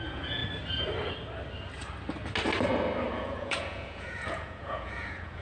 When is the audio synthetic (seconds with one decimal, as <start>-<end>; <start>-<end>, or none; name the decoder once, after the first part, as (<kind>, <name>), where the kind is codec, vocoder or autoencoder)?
0.0-0.4 (vocoder, Vocos); 3.1-5.4